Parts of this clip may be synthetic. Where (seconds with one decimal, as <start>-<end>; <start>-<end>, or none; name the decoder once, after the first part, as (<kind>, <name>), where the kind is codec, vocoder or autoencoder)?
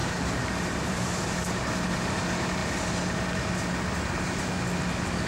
0.0-1.7 (vocoder, BigVGAN v2)